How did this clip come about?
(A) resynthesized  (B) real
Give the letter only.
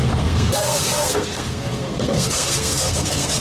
A